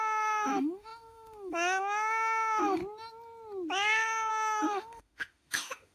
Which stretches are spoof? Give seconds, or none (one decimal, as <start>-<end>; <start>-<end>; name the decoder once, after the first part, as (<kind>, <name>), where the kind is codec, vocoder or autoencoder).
0.0-2.8 (autoencoder, DAC-VAE); 4.3-5.9